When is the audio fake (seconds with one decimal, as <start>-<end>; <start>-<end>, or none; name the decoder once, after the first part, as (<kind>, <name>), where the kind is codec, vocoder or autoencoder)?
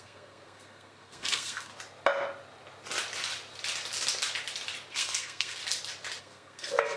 0.0-1.7 (codec, SNAC); 4.9-5.6; 6.2-7.0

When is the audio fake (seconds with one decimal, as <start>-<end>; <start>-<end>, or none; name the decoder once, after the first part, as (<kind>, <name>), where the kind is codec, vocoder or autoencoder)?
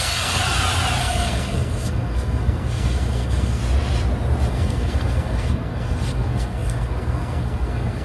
0.0-0.4 (codec, SNAC); 1.0-3.6; 4.5-8.0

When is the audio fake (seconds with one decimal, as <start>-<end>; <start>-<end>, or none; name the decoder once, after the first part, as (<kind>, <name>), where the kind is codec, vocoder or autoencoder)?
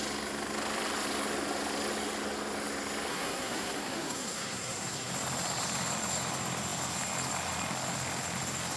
3.1-5.1 (codec, SNAC)